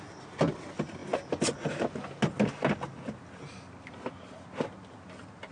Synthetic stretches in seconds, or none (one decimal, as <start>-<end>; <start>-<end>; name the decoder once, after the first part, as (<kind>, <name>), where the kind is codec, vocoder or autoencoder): none